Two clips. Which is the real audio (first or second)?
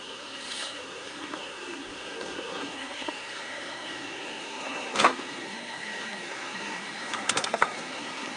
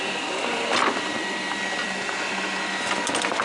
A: second